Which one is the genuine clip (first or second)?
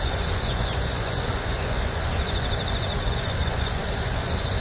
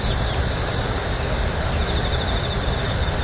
second